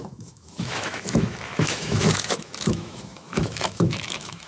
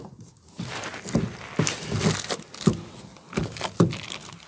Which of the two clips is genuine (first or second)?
second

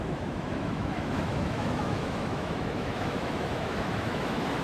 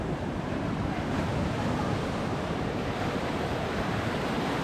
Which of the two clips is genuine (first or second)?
second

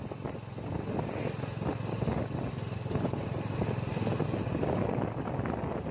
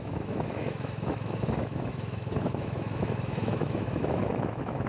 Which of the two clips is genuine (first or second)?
first